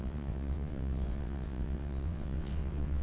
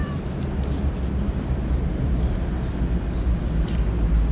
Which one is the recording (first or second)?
second